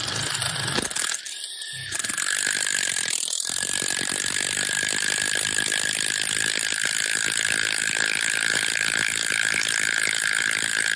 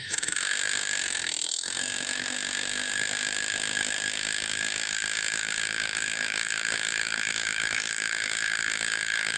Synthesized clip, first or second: second